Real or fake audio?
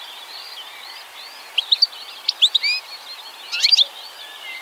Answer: real